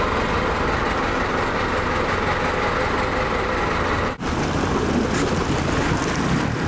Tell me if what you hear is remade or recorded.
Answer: recorded